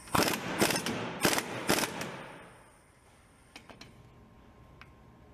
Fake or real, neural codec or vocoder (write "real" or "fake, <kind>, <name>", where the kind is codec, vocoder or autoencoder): real